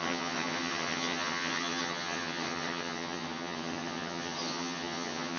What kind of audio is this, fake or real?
fake